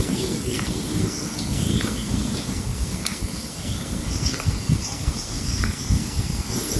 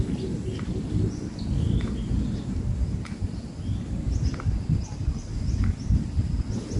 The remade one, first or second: first